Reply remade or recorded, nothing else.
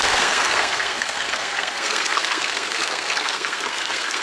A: remade